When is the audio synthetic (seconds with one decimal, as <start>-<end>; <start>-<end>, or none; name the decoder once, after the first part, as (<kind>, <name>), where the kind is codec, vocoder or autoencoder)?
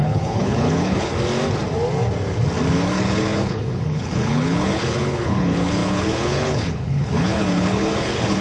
0.0-1.1 (codec, HILCodec); 2.7-8.4